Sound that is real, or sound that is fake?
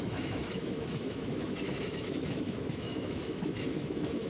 fake